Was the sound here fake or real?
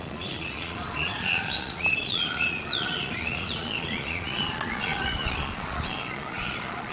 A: fake